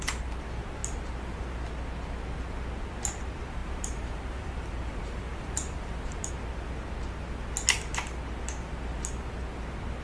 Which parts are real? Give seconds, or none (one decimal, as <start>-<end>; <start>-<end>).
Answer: 0.0-3.6; 6.3-10.0